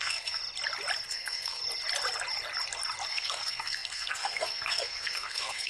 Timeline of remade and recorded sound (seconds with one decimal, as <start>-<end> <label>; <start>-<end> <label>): 0.0-0.4 remade; 0.4-1.1 recorded; 1.1-1.6 remade; 1.6-3.1 recorded; 3.1-5.7 remade